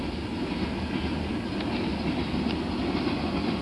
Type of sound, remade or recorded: recorded